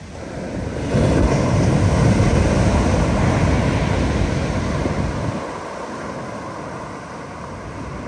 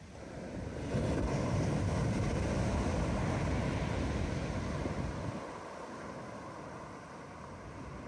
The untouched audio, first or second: first